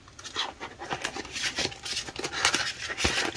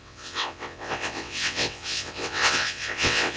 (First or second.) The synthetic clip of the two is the second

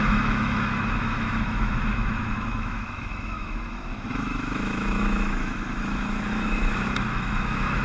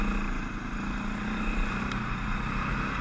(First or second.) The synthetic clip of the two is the first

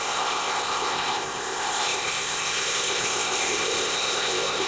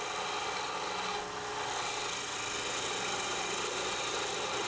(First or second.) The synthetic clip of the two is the first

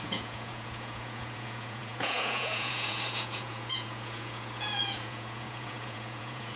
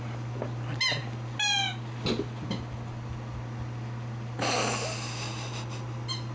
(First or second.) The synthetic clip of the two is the first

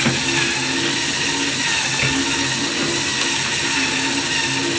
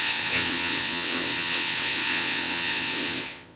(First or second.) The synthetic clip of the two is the second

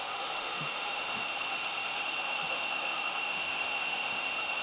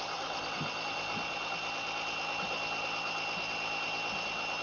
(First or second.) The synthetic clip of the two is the first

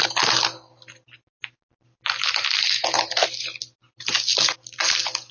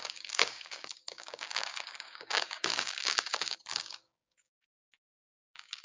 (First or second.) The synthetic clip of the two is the second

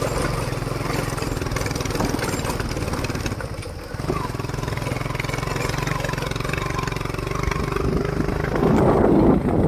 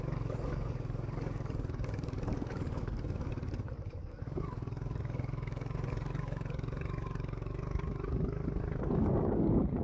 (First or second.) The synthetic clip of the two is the second